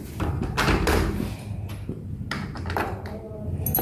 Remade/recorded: recorded